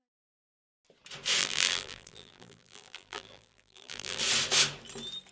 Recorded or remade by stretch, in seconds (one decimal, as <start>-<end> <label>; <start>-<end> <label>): 0.0-1.4 recorded; 1.4-4.2 remade; 4.2-5.3 recorded